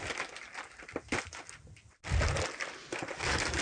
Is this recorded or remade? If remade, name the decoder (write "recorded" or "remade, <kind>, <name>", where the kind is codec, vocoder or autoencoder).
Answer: recorded